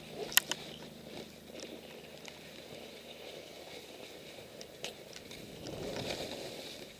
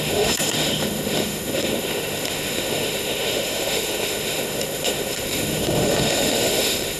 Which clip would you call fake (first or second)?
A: second